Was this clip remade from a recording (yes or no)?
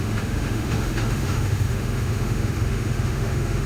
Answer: yes